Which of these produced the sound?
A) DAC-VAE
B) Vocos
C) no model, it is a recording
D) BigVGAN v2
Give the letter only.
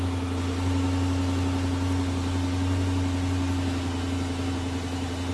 C